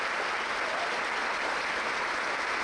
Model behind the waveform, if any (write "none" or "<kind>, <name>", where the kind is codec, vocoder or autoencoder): none